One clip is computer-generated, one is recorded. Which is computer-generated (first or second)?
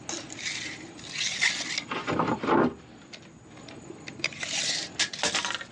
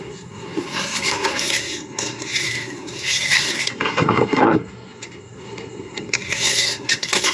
second